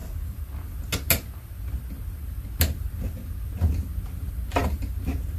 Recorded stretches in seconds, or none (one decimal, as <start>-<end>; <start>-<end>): 0.0-5.4